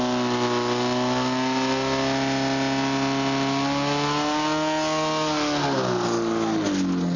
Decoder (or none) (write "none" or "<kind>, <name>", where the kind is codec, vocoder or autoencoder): none